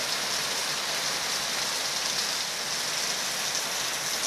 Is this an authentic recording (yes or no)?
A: yes